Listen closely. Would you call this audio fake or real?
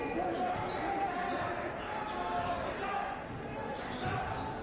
real